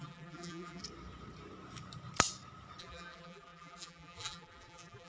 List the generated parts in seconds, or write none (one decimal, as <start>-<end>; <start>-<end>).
0.0-0.8; 2.8-5.1